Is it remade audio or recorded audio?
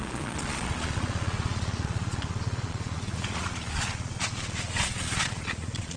remade